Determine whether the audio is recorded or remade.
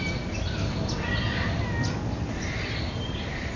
recorded